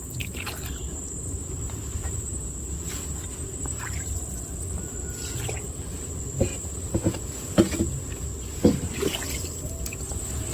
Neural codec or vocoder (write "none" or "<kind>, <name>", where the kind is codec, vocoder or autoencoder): none